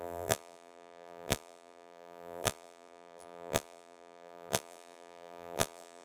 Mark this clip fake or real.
fake